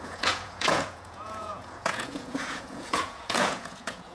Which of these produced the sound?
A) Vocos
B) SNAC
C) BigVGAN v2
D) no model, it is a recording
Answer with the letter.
A